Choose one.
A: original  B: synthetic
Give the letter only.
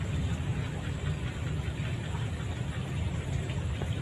A